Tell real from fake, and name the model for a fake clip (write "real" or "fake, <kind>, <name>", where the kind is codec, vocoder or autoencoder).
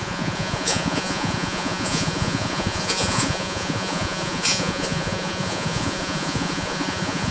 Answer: fake, vocoder, Vocos